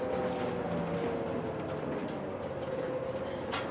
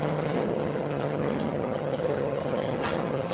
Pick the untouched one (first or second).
first